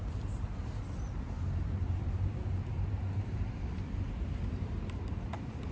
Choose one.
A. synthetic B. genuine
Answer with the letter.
A